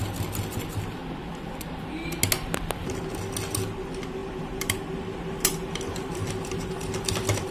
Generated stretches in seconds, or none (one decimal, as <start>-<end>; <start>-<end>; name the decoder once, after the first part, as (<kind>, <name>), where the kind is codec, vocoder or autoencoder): 4.2-7.5 (vocoder, BigVGAN v2)